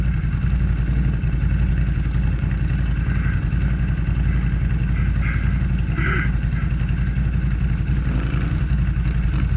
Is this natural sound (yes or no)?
yes